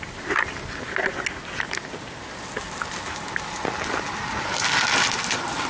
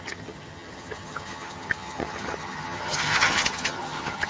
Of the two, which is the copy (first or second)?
second